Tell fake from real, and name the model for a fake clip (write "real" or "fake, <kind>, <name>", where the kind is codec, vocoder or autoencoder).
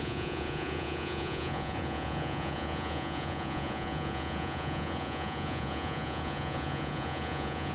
fake, vocoder, Vocos